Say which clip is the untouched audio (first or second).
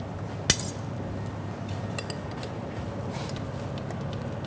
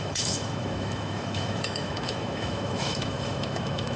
first